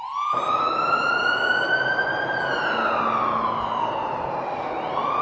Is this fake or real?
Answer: real